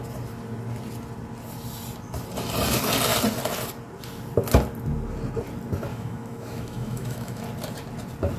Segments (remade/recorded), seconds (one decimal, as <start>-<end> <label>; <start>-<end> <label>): 0.0-5.9 recorded; 5.9-7.4 remade; 7.4-8.4 recorded